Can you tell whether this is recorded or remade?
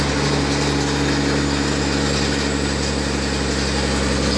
recorded